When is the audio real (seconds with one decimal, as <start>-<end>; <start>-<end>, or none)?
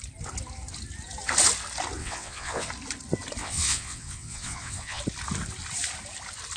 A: 0.0-2.0; 2.7-3.4; 5.0-6.6